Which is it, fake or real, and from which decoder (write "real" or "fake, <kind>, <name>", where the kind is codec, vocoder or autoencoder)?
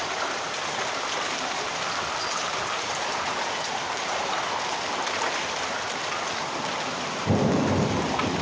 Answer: real